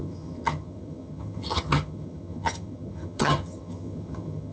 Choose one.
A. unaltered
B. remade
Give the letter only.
B